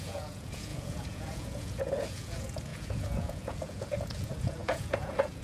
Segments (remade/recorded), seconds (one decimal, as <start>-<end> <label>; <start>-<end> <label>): 0.0-5.4 remade